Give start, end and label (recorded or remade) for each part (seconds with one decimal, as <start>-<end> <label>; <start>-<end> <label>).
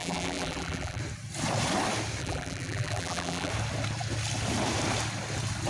0.0-1.0 remade; 1.0-2.2 recorded; 2.2-3.5 remade; 3.5-5.7 recorded